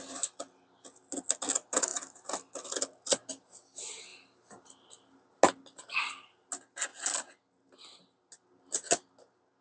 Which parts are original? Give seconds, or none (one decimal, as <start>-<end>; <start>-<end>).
0.0-9.6